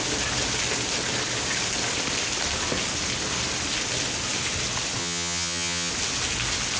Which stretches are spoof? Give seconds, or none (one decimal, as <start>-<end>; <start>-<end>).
5.0-5.9